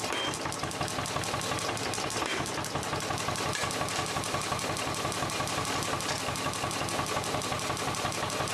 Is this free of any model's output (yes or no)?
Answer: yes